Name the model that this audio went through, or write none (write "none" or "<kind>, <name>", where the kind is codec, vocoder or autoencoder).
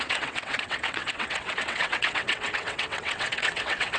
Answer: vocoder, WaveNeXt